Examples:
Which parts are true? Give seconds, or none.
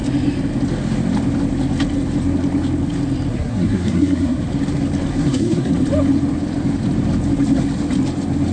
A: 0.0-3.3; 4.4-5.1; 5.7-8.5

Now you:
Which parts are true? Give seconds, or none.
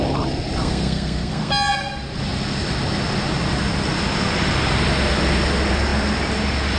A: 0.0-0.6; 1.5-6.8